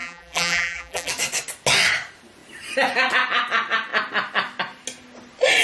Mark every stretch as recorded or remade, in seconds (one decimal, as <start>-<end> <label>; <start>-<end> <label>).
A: 0.0-1.1 remade; 1.1-5.6 recorded